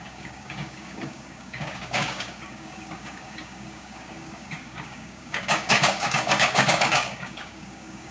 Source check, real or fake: fake